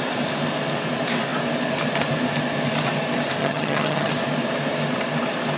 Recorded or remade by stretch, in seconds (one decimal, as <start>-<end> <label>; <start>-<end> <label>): 0.0-3.4 recorded; 3.4-4.1 remade; 4.1-5.6 recorded